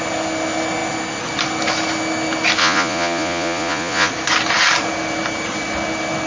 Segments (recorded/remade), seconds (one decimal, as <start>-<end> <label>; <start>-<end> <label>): 0.0-2.6 recorded; 2.6-4.1 remade; 4.1-6.3 recorded